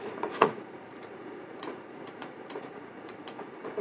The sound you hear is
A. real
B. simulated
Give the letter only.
B